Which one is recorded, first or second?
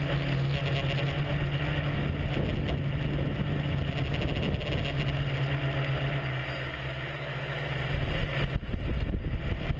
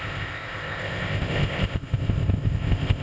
first